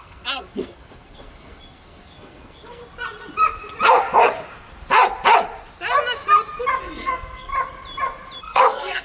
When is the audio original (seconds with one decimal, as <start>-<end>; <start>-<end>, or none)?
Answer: 2.8-6.8; 7.5-8.4